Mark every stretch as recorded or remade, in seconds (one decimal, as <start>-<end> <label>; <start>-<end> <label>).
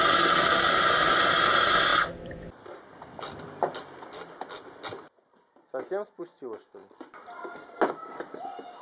0.0-8.8 recorded